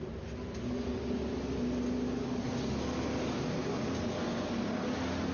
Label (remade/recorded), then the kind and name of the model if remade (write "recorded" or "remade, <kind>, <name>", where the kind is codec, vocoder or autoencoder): recorded